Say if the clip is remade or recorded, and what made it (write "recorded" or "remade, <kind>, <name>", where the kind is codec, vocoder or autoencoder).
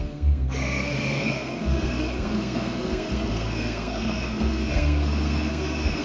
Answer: remade, codec, SNAC